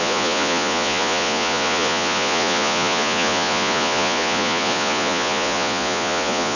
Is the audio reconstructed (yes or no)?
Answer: yes